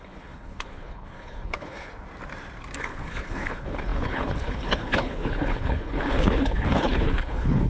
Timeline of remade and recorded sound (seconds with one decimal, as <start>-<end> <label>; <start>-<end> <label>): 0.0-1.9 remade; 1.9-2.8 recorded; 2.8-7.7 remade